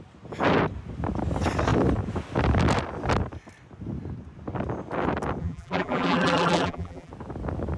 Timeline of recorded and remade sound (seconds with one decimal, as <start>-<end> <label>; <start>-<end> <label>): 0.0-5.4 recorded; 5.4-7.1 remade; 7.1-7.8 recorded